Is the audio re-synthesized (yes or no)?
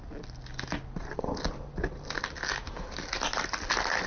no